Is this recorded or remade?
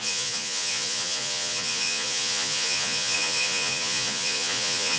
remade